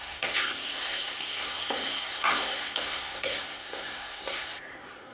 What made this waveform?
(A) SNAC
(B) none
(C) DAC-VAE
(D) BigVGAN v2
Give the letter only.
A